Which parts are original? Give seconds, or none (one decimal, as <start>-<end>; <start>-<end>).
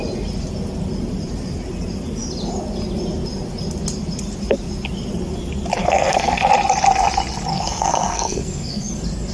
0.0-5.8; 6.4-7.5; 8.9-9.3